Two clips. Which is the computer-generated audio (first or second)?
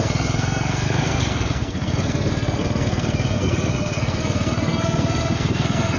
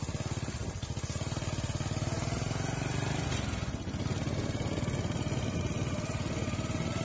first